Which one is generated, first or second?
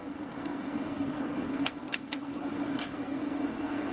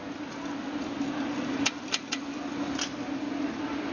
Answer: first